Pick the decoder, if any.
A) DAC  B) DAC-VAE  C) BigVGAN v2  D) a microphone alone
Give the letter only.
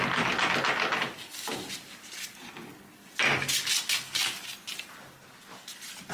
D